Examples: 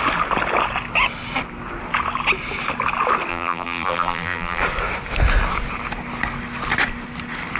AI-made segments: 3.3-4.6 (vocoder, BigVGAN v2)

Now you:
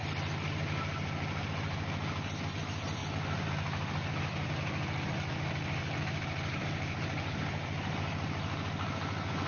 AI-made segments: none

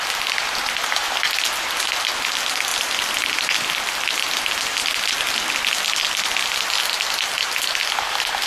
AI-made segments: none

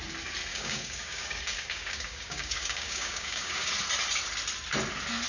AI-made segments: 0.5-3.7 (codec, DAC)

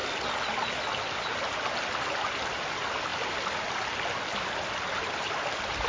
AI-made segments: none

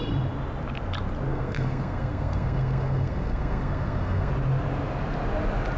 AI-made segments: 1.3-4.3 (codec, SNAC)